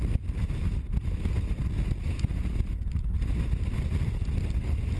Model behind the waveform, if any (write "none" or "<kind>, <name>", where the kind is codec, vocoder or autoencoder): none